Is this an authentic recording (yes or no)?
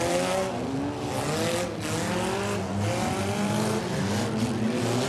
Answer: yes